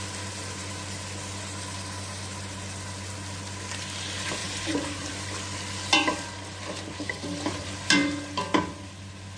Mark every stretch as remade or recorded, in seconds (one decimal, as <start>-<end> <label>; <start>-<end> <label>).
0.0-4.4 recorded; 4.4-5.1 remade; 5.1-9.4 recorded